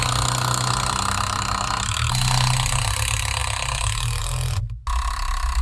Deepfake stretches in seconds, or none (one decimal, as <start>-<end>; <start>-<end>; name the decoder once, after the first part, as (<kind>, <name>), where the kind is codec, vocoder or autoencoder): none